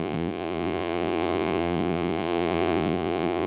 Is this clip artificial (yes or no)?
yes